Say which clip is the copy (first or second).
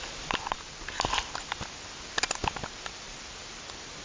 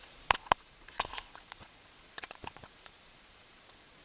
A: second